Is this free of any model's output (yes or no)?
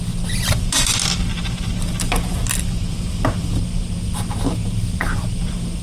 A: yes